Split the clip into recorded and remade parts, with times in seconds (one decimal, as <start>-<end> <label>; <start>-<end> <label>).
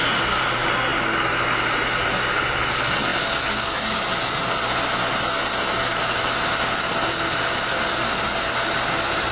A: 0.0-9.3 recorded